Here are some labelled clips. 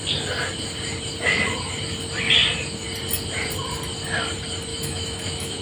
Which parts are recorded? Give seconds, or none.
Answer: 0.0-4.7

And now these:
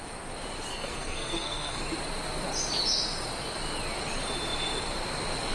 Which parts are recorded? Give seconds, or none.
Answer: 0.0-0.7; 1.8-5.5

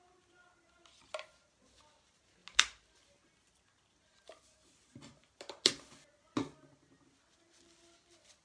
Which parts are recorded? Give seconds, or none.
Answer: 0.0-8.4